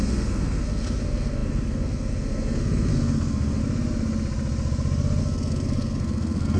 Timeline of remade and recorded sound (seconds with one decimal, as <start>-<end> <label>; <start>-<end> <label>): 0.0-3.6 remade; 3.6-5.2 recorded; 5.2-6.6 remade